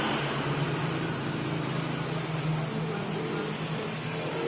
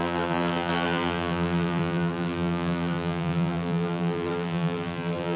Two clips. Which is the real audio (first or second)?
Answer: first